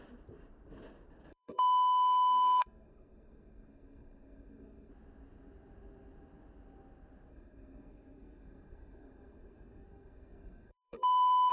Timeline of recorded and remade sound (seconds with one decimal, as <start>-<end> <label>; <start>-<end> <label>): 0.0-1.3 recorded; 1.3-4.9 remade; 4.9-7.3 recorded; 7.3-11.5 remade